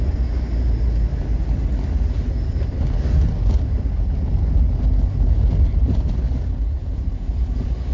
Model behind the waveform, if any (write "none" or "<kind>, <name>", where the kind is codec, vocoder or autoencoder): none